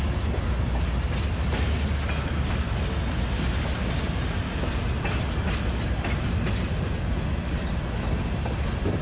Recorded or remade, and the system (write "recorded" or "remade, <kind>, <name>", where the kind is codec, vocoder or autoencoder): recorded